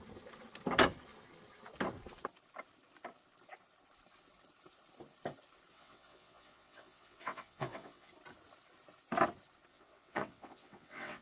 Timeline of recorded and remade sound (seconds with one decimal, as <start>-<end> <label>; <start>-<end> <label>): 0.0-5.7 recorded; 5.7-8.1 remade; 8.1-9.7 recorded; 9.7-11.2 remade